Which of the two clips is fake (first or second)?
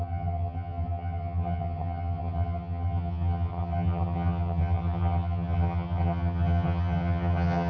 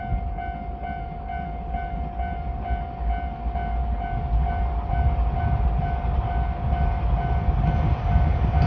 first